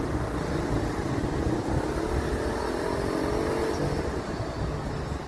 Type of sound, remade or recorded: recorded